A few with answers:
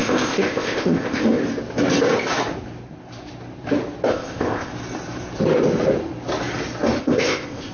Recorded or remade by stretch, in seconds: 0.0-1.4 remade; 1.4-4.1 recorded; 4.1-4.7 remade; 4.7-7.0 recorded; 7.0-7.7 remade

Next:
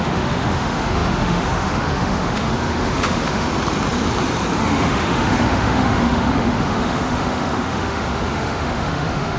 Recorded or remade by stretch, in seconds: 0.0-3.5 remade; 3.5-4.6 recorded; 4.6-9.4 remade

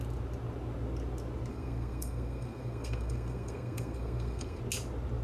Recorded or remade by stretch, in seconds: 0.0-1.5 recorded; 1.5-4.6 remade; 4.6-5.2 recorded

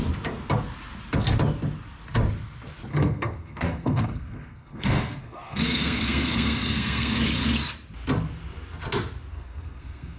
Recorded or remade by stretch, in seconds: 0.0-2.9 recorded; 2.9-7.2 remade; 7.2-9.3 recorded; 9.3-10.2 remade